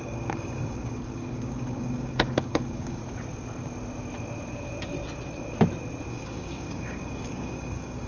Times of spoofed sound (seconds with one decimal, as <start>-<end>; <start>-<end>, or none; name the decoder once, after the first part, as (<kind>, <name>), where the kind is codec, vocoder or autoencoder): 0.0-3.0 (codec, DAC); 6.1-8.1